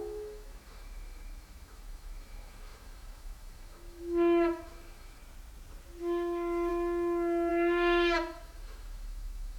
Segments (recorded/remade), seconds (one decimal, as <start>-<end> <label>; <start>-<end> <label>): 0.0-5.2 remade; 5.2-6.0 recorded; 6.0-6.7 remade; 6.7-7.5 recorded; 7.5-9.6 remade